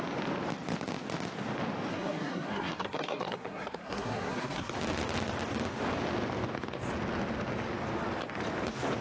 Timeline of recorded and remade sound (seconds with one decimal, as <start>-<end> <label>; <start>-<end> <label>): 0.0-1.9 recorded; 1.9-4.7 remade; 4.7-9.0 recorded